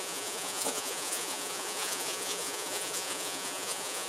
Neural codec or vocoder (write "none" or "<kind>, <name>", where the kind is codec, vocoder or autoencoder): vocoder, Vocos